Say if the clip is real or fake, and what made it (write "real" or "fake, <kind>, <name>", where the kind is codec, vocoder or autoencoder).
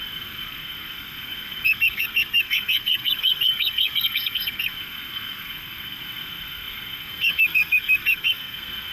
fake, codec, SNAC